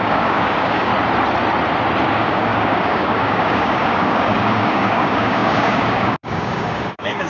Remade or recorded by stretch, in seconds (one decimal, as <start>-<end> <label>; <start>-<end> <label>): 0.0-0.9 remade; 0.9-2.1 recorded; 2.1-7.3 remade